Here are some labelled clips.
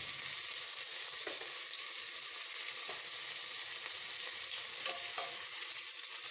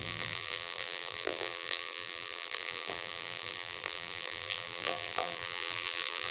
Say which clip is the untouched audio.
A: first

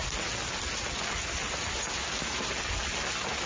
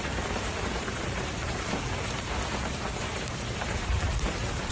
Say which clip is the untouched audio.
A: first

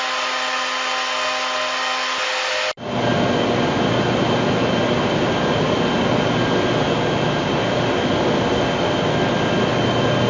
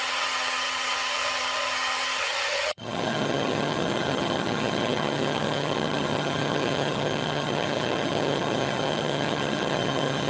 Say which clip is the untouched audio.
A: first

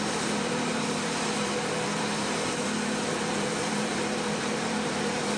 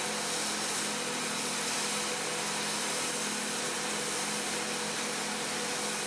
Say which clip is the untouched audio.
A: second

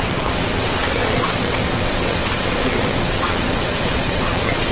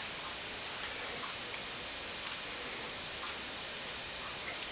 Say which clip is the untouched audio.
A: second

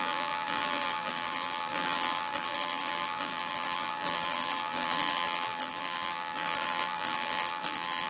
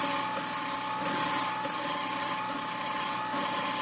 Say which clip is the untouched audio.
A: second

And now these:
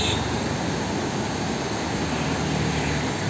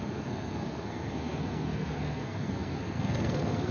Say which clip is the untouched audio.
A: first